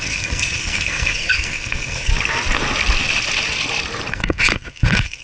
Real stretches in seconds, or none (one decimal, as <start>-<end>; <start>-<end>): 2.1-4.1